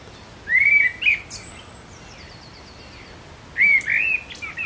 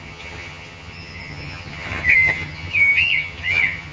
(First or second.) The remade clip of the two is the second